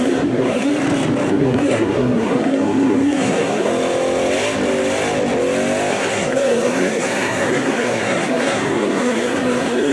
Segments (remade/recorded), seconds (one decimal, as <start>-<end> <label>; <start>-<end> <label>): 0.0-0.7 remade; 0.7-1.3 recorded; 1.3-3.7 remade; 3.7-5.9 recorded; 5.9-9.9 remade